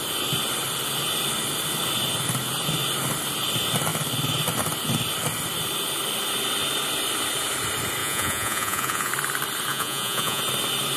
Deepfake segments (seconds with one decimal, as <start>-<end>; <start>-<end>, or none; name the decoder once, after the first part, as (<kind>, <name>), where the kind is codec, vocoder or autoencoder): 8.0-9.1 (vocoder, Vocos); 9.7-10.4